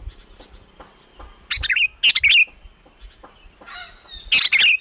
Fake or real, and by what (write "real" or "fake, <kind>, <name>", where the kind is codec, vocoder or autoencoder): real